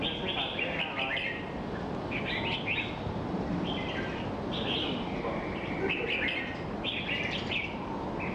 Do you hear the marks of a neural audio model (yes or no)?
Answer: no